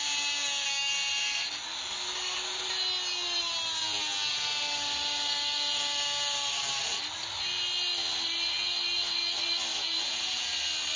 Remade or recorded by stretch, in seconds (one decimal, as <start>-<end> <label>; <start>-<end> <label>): 0.0-9.7 recorded; 9.7-10.5 remade; 10.5-11.0 recorded